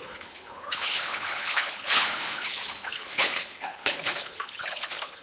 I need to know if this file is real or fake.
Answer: fake